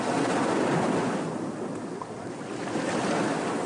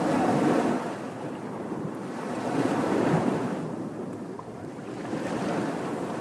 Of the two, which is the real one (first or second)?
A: first